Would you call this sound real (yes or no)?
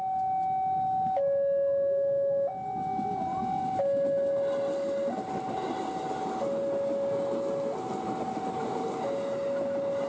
yes